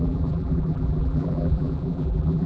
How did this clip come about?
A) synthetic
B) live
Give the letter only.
A